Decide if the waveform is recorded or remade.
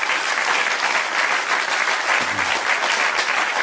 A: recorded